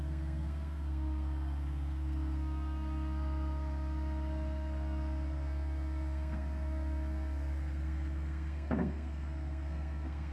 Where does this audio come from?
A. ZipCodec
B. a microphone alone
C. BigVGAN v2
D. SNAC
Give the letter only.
D